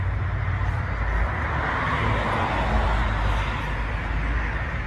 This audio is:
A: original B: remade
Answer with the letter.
A